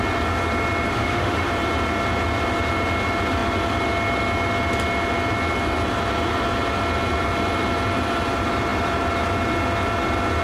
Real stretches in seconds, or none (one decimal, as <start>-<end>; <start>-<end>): 0.0-0.9; 1.5-10.4